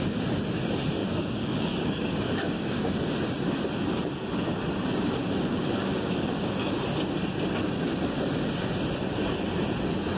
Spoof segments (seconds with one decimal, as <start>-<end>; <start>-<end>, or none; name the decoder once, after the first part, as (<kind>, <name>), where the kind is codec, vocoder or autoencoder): 1.0-2.9 (codec, DAC); 5.2-6.8